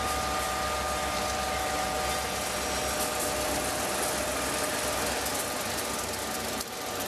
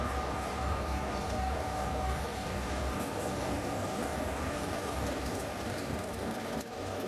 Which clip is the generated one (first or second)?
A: second